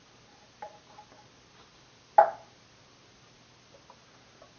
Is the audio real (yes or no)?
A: yes